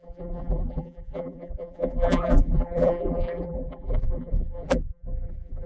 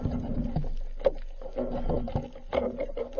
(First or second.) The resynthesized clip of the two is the first